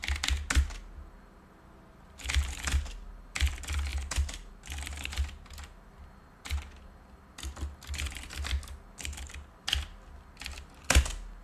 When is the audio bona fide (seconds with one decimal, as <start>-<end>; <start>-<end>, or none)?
0.0-11.4